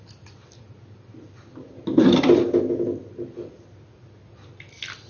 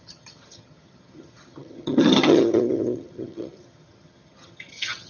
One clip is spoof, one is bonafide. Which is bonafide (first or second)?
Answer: first